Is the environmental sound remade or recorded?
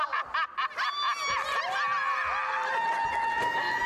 recorded